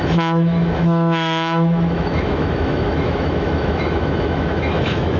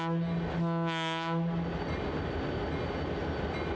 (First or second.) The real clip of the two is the second